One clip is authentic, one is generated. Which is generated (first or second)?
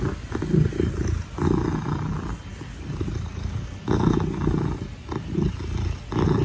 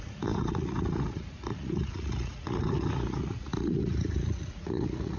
second